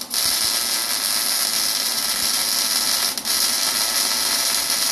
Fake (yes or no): no